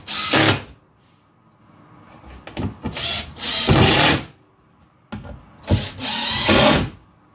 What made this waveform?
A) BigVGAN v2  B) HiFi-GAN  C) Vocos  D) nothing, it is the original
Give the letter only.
D